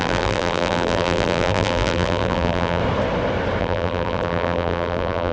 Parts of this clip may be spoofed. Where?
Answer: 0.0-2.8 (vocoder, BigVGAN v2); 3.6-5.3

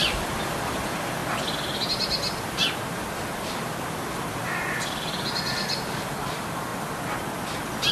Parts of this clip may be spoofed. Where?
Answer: 0.0-1.2 (vocoder, BigVGAN v2); 3.4-6.7

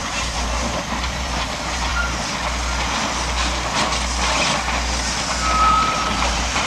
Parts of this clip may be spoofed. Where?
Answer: 0.0-1.9 (vocoder, BigVGAN v2); 5.9-6.7

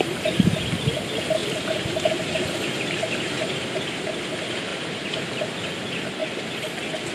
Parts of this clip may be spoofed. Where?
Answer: 1.4-4.2 (vocoder, BigVGAN v2); 4.7-5.4

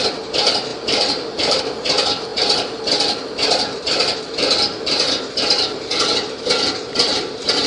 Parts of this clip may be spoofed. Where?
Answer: 0.7-1.6 (vocoder, BigVGAN v2)

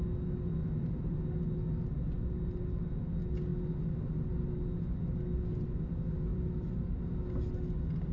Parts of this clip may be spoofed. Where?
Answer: 0.6-1.2 (vocoder, BigVGAN v2); 6.3-7.0

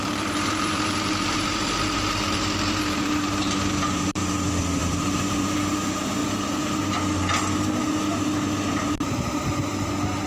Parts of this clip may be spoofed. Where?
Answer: 0.0-4.2 (vocoder, BigVGAN v2); 4.8-6.2; 8.8-10.3